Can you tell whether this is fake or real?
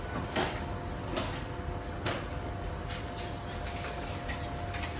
real